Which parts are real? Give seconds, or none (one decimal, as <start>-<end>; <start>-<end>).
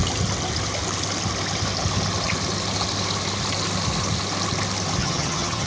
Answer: 0.0-5.0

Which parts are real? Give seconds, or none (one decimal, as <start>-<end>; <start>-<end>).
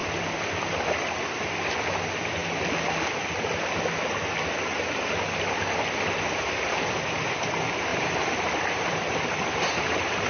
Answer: 0.0-7.9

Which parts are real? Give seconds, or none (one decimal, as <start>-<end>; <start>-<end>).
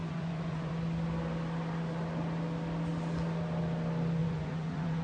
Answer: 0.7-4.2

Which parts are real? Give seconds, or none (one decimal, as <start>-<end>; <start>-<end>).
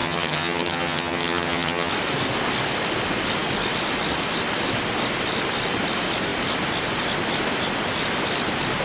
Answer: 1.9-8.8